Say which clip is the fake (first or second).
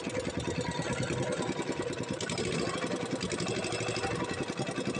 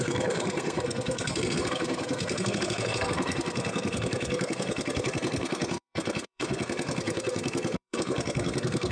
second